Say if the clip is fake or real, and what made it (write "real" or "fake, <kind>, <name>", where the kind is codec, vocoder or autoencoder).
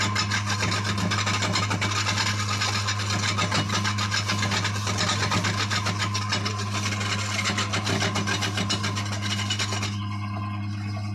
real